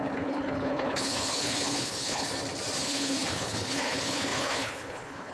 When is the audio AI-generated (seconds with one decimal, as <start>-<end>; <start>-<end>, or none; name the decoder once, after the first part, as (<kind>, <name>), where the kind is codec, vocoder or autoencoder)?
0.0-2.3 (codec, HILCodec); 2.8-5.3

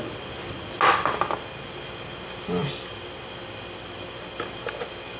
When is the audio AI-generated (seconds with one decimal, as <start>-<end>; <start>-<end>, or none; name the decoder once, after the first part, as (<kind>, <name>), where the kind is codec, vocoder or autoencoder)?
none

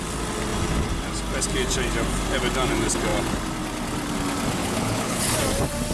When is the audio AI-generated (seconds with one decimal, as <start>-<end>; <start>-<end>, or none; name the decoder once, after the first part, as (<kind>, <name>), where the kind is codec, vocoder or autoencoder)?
4.6-5.2 (codec, HILCodec)

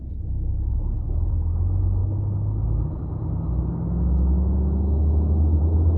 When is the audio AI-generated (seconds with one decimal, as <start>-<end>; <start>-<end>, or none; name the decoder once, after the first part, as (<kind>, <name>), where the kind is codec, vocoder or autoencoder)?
0.7-1.3 (codec, HILCodec)